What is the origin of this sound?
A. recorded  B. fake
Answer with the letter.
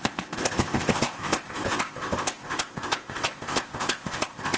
B